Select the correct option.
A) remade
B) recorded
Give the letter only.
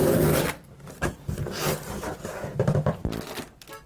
B